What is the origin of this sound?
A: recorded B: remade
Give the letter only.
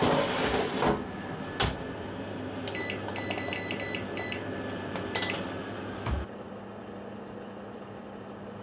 A